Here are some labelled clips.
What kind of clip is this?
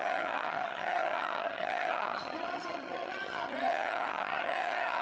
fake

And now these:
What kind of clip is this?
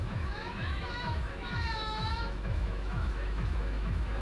fake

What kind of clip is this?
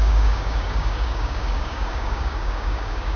fake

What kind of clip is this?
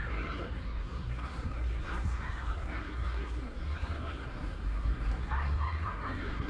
fake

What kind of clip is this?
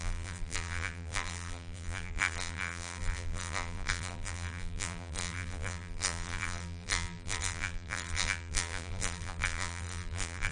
fake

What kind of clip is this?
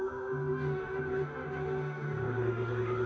fake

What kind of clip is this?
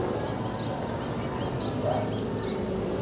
real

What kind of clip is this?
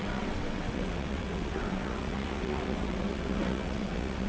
fake